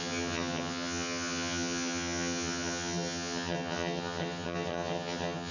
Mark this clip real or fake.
fake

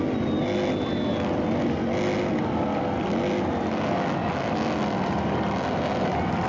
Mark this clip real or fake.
real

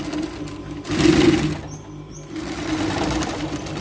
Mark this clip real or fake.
real